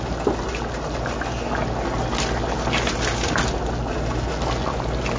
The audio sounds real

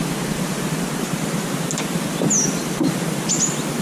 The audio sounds real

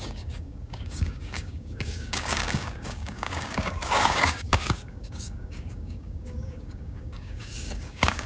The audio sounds fake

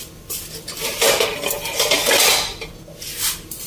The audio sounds real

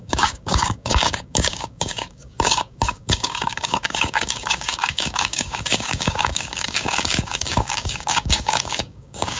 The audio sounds fake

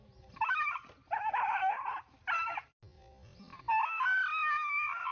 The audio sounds real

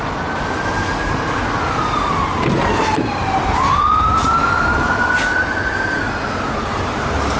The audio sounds real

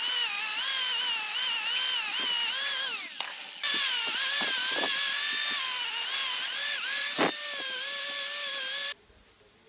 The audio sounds real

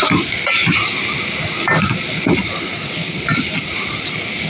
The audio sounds real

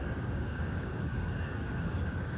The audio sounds fake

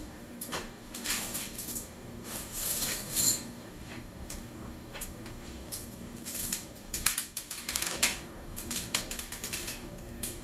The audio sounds fake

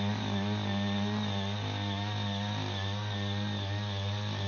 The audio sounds real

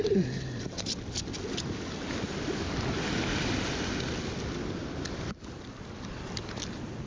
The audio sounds real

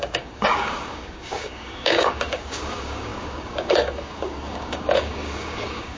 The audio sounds fake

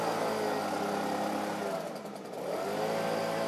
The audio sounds real